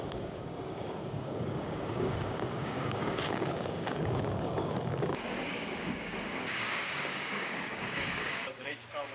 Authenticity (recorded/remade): remade